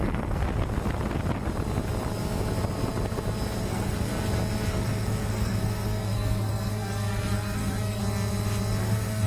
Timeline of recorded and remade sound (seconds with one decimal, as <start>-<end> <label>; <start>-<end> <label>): 0.0-0.4 remade; 0.4-3.6 recorded; 3.6-4.1 remade; 4.1-4.7 recorded; 4.7-8.0 remade; 8.0-8.8 recorded; 8.8-9.3 remade